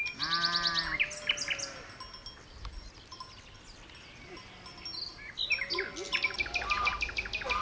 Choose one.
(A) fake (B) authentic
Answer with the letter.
B